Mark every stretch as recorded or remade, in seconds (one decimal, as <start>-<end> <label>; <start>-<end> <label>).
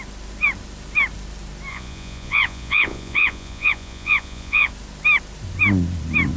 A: 0.0-1.7 recorded; 1.7-4.7 remade; 4.7-6.4 recorded